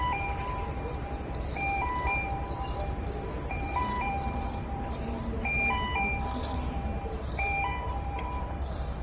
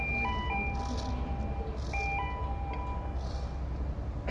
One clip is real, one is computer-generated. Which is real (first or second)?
second